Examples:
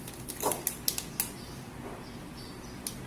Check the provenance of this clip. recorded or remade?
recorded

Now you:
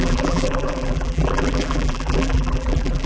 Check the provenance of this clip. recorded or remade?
remade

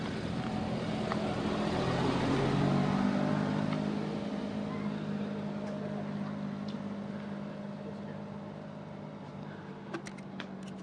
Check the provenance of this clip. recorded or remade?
recorded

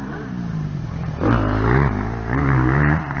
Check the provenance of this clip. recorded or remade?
remade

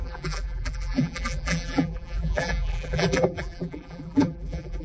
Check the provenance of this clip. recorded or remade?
remade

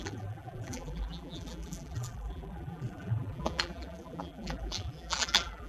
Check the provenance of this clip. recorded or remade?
remade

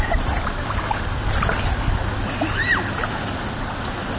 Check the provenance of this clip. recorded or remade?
recorded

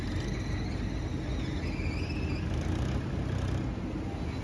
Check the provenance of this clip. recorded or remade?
recorded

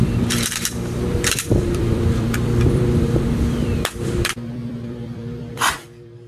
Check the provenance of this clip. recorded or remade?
remade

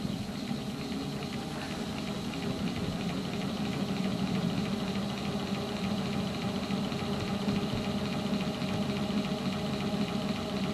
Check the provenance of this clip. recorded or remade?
recorded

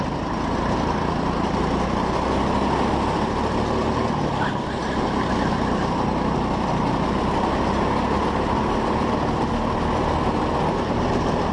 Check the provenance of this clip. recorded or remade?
recorded